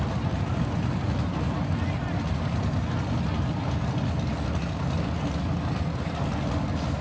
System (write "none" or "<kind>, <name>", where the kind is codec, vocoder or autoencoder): none